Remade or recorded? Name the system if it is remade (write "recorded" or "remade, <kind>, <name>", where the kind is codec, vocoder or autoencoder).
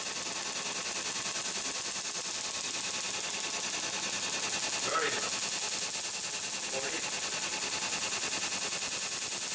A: recorded